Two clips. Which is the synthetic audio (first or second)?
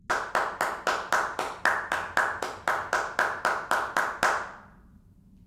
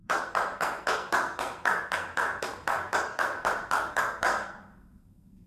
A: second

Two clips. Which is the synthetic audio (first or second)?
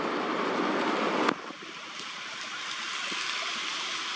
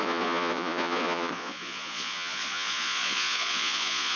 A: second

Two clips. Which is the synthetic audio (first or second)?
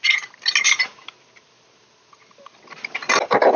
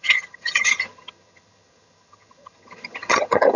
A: second